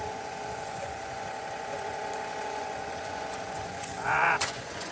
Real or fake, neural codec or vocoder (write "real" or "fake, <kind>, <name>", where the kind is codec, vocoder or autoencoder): fake, vocoder, Vocos